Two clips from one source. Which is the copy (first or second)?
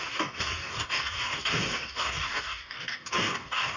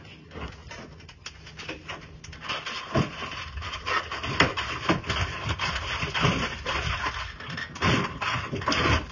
first